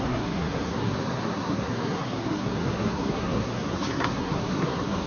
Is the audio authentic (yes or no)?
no